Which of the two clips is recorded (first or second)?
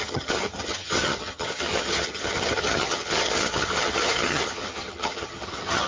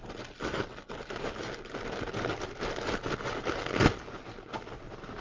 second